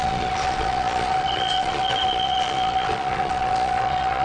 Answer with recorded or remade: remade